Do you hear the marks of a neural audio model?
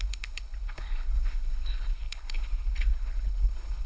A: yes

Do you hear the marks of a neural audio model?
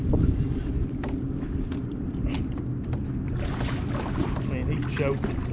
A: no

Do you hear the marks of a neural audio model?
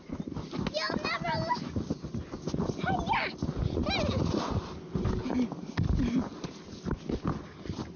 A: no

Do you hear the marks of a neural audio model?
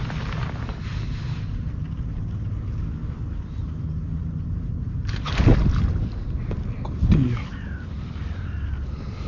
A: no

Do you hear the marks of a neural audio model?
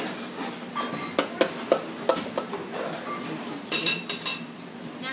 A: no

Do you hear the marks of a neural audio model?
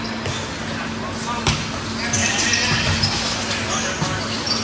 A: no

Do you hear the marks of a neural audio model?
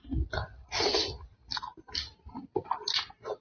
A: no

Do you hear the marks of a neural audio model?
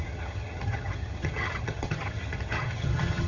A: yes